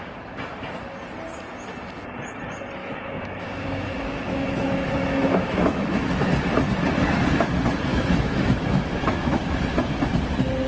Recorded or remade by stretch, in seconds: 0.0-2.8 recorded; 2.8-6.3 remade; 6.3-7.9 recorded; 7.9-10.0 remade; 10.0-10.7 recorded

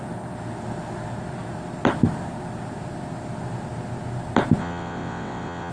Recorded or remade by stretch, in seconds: 0.0-4.6 recorded; 4.6-5.7 remade

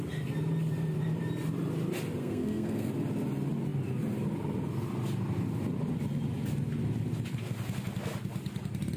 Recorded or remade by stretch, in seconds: 0.0-2.2 recorded; 2.2-2.9 remade; 2.9-9.0 recorded

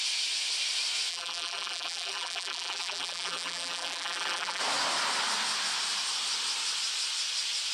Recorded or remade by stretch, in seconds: 0.0-1.1 recorded; 1.1-4.6 remade; 4.6-7.7 recorded

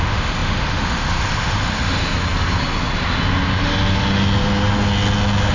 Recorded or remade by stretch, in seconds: 0.0-2.0 remade; 2.0-5.5 recorded